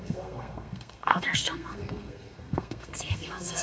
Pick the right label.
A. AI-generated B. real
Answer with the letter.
A